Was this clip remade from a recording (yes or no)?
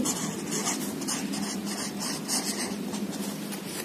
no